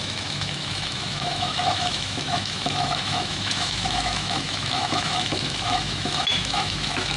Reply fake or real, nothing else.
fake